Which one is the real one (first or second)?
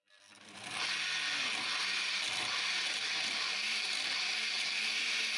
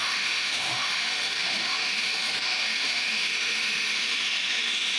first